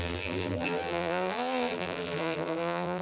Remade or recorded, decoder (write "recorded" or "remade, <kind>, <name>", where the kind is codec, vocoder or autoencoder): remade, vocoder, BigVGAN v2